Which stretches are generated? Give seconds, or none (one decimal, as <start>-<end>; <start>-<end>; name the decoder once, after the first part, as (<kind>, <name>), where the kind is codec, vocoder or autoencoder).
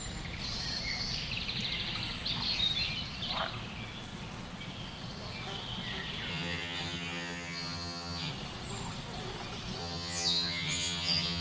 6.3-8.3 (vocoder, HiFi-GAN); 9.8-11.4